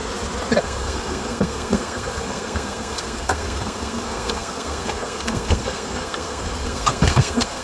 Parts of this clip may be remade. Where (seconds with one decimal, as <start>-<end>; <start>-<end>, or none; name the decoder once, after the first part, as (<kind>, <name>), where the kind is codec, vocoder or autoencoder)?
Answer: 0.6-7.6 (codec, SNAC)